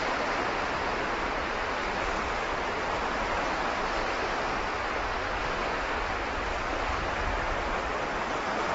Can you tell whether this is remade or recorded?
recorded